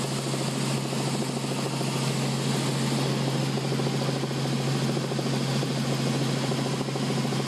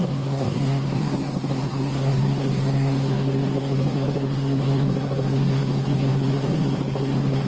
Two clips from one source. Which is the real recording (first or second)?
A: first